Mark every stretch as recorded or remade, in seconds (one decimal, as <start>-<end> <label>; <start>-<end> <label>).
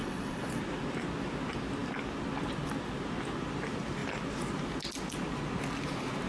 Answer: 0.0-0.6 remade; 0.6-6.3 recorded